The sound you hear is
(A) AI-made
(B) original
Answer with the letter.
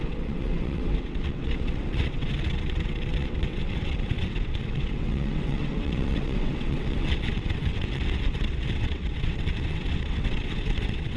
A